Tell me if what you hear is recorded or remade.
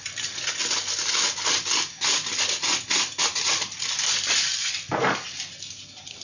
recorded